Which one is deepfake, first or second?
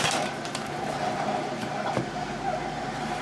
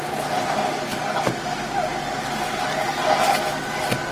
first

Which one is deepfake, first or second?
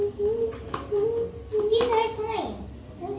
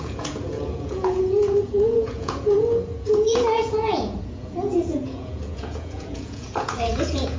second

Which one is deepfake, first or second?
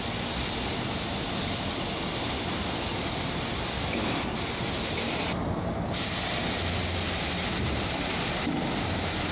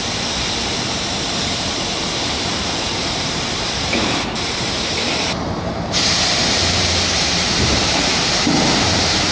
second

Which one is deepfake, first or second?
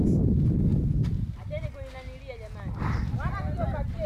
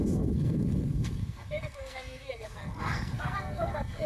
second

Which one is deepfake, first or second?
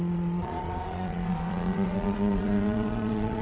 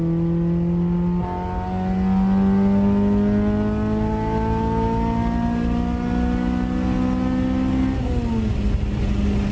first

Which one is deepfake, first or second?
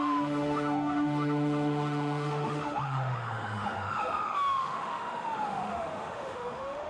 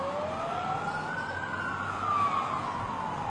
first